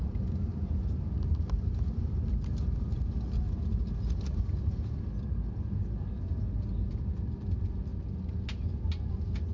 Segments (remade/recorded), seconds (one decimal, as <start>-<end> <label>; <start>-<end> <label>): 0.0-9.5 recorded